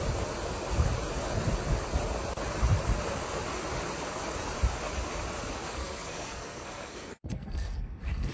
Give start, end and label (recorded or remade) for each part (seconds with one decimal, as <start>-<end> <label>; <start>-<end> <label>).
0.0-5.8 recorded; 5.8-8.3 remade